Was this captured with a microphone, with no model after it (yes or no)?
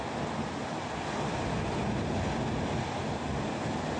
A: yes